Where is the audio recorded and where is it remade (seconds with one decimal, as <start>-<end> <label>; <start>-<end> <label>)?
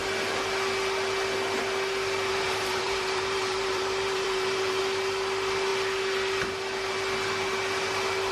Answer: 0.0-2.3 recorded; 2.3-4.8 remade; 4.8-8.3 recorded